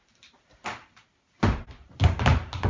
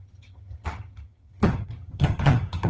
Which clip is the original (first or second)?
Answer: first